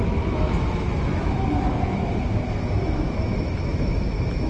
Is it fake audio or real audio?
fake